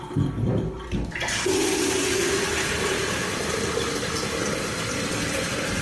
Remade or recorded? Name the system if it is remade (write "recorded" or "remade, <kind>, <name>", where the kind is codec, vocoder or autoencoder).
recorded